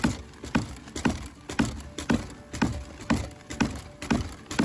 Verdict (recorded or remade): recorded